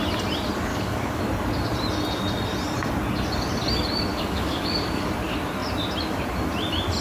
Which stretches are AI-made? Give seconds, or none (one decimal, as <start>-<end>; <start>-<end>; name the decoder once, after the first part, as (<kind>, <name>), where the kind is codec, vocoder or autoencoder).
0.7-1.2 (codec, DAC); 4.1-5.1